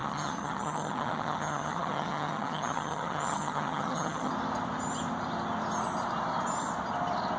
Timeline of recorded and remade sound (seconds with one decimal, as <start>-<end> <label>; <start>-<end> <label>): 0.0-4.3 remade; 4.3-7.4 recorded